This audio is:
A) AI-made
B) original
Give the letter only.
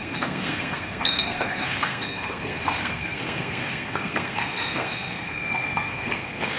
A